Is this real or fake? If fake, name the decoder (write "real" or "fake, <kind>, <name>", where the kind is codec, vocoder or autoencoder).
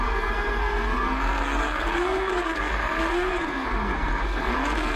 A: fake, codec, SNAC